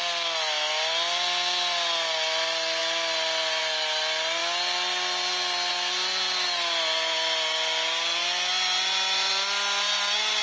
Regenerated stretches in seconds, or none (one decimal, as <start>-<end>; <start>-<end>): none